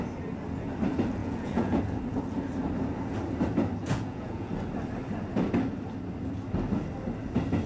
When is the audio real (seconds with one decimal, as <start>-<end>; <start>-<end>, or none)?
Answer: 0.0-1.2; 1.8-3.8; 4.5-7.7